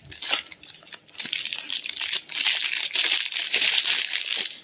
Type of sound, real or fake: real